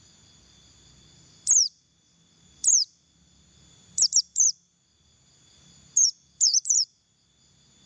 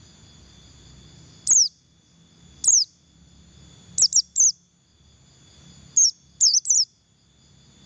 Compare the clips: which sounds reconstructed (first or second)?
first